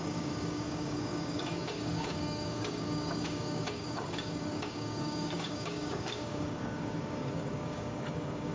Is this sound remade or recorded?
remade